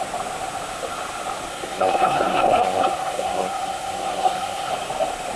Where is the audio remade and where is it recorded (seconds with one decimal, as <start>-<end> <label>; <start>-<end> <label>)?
0.0-1.5 recorded; 1.5-4.7 remade; 4.7-5.4 recorded